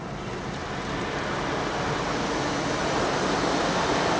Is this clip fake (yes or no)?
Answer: no